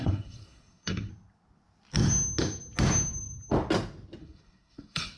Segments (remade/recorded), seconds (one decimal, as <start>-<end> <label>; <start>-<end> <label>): 0.0-1.1 remade; 1.1-4.2 recorded; 4.2-5.2 remade